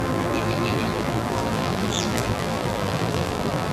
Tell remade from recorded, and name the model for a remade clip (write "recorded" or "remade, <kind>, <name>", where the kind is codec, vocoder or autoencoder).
remade, vocoder, BigVGAN v2